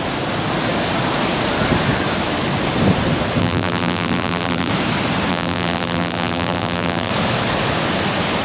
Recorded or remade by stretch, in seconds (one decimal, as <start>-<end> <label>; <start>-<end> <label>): 0.0-3.4 recorded; 3.4-4.7 remade; 4.7-5.3 recorded; 5.3-7.1 remade; 7.1-8.4 recorded